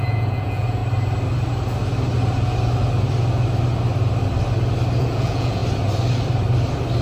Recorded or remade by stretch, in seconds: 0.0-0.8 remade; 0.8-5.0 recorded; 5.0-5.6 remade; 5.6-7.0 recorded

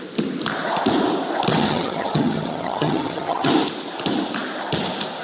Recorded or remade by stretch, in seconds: 0.0-1.5 recorded; 1.5-3.5 remade; 3.5-5.2 recorded

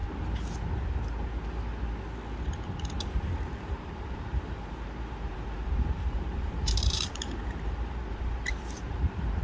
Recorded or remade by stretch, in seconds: 0.0-3.2 recorded; 3.2-9.4 remade

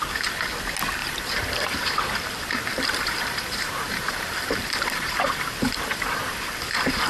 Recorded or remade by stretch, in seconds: 0.0-1.0 recorded; 1.0-1.9 remade; 1.9-2.7 recorded; 2.7-7.1 remade

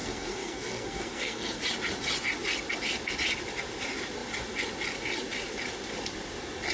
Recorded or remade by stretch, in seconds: 0.0-1.6 remade; 1.6-6.7 recorded

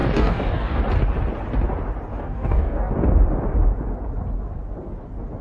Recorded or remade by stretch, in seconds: 0.0-0.8 remade; 0.8-2.1 recorded; 2.1-2.9 remade; 2.9-5.4 recorded